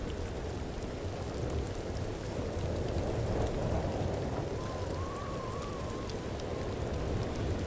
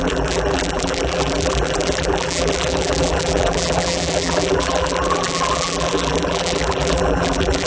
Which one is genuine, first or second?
first